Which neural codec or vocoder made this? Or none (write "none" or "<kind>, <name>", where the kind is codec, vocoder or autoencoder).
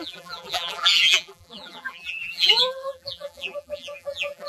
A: vocoder, BigVGAN v2